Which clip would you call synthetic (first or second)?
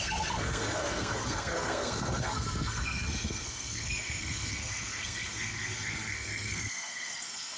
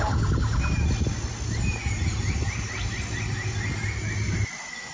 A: first